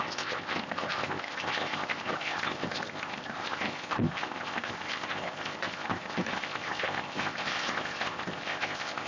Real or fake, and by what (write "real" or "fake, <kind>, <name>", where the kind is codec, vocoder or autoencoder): fake, codec, ZipCodec